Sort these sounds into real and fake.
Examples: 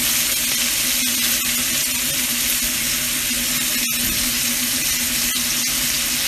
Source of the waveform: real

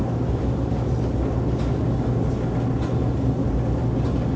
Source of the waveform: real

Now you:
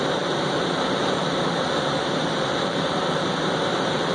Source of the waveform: fake